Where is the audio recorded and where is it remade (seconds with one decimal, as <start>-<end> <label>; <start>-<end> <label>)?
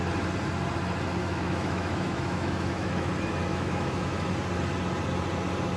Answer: 0.0-1.2 recorded; 1.2-3.1 remade; 3.1-3.5 recorded; 3.5-4.3 remade; 4.3-5.8 recorded